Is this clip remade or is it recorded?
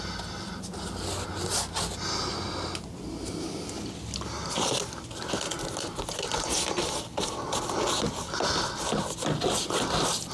recorded